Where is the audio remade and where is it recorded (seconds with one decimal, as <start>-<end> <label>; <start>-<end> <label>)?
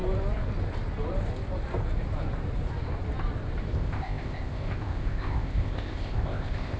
0.0-3.7 recorded; 3.7-6.8 remade